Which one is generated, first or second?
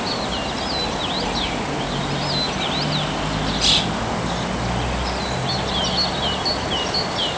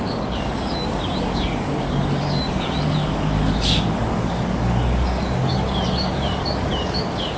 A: second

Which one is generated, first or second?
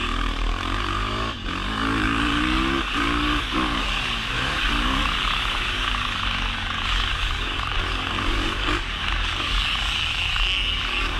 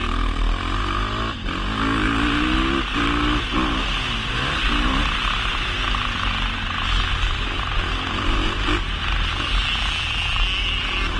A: first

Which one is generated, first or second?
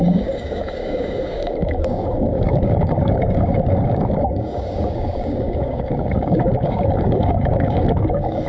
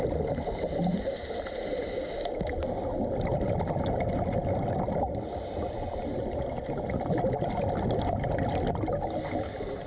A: first